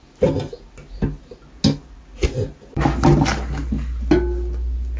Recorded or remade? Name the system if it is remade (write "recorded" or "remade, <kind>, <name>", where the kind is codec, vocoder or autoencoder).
recorded